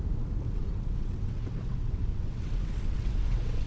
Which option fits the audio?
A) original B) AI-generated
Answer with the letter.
B